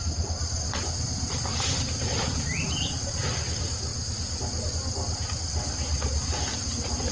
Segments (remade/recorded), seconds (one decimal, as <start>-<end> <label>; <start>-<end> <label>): 0.0-7.1 recorded